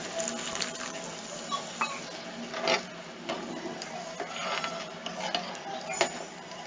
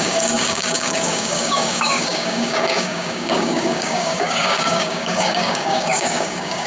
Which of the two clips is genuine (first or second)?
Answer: first